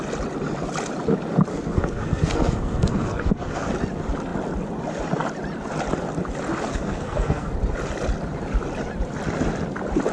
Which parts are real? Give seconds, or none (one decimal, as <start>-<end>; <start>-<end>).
0.0-1.5; 3.7-6.7; 7.5-10.1